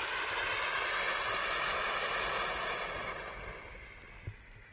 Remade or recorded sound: recorded